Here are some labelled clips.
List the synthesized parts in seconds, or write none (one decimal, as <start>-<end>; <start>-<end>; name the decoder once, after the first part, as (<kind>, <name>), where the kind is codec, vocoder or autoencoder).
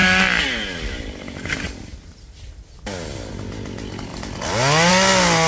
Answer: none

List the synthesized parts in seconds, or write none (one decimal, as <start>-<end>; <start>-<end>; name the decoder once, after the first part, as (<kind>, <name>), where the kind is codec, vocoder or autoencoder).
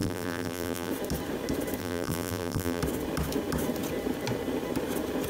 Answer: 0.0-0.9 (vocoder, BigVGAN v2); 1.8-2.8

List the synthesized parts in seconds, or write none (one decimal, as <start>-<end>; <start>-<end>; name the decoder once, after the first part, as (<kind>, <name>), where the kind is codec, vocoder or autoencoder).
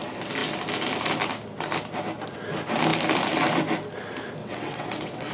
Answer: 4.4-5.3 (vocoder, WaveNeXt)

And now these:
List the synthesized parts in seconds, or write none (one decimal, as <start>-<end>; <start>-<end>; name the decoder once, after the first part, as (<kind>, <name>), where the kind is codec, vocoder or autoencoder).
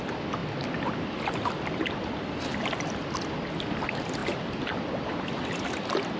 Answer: none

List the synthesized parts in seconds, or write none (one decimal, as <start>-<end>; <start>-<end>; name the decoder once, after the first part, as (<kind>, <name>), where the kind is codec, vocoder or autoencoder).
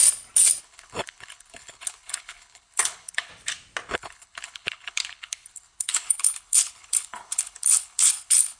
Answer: 0.6-3.3 (codec, HILCodec); 3.9-8.6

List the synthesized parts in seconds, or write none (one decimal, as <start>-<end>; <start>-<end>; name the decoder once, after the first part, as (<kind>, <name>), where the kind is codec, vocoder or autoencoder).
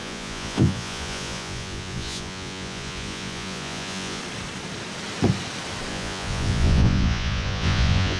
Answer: 0.0-4.2 (vocoder, Vocos); 5.9-8.2